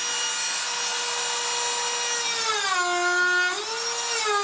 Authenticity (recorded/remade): recorded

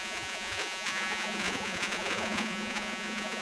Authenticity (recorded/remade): remade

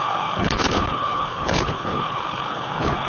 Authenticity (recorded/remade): remade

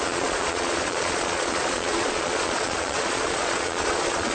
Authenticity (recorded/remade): remade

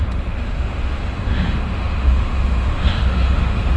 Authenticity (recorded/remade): remade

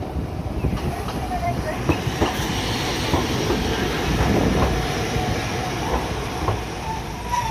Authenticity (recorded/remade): remade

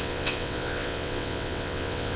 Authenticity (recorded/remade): remade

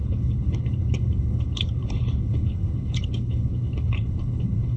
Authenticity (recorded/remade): remade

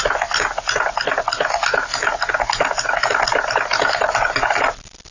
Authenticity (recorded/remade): recorded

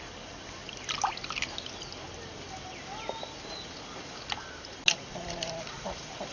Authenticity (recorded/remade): recorded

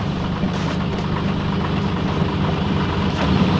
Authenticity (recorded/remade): recorded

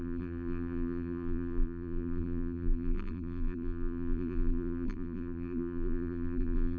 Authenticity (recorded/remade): remade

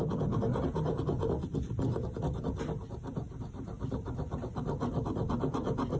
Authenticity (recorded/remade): recorded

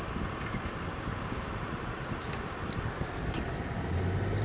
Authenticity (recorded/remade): recorded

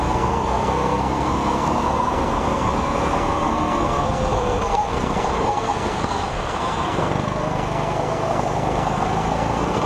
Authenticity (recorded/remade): remade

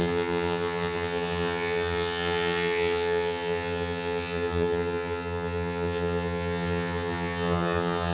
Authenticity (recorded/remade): remade